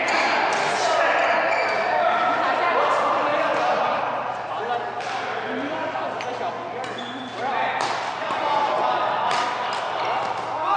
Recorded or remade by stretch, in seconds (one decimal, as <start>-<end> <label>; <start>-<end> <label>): 0.0-3.3 recorded; 3.3-4.6 remade; 4.6-10.8 recorded